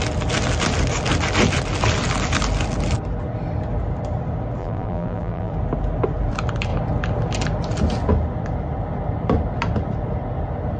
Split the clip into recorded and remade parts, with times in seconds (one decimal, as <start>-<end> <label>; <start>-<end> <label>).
0.0-4.6 recorded; 4.6-5.5 remade; 5.5-10.8 recorded